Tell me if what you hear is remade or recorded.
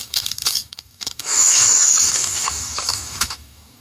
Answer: remade